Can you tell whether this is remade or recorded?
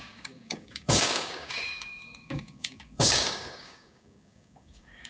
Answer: remade